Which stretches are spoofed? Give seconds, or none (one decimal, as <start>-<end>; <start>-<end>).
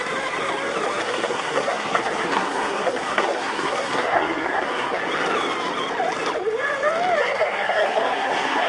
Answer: 1.0-5.0; 7.2-8.7